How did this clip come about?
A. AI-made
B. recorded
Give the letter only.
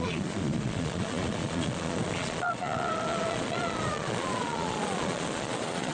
A